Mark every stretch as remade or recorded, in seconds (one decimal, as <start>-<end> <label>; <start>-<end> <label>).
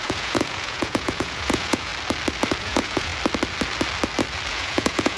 0.0-1.9 remade; 1.9-2.6 recorded; 2.6-3.1 remade; 3.1-4.5 recorded; 4.5-5.2 remade